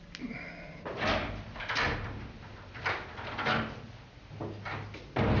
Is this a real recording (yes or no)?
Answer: yes